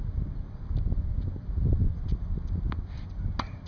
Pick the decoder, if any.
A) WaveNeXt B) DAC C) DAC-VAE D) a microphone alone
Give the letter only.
D